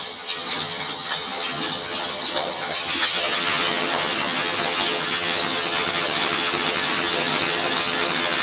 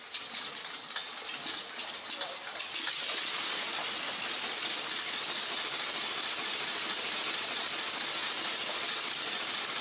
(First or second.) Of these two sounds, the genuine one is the second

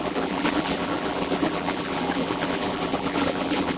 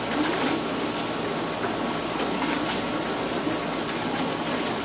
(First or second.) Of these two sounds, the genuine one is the second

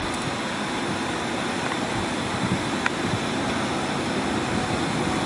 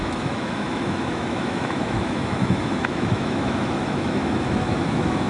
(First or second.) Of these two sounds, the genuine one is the first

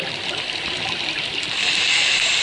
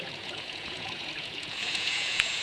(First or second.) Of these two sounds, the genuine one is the first